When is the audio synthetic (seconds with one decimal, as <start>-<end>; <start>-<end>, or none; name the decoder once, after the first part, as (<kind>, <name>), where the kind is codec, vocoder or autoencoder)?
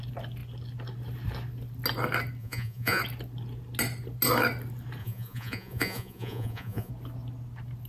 2.4-3.0 (vocoder, Vocos); 5.0-6.9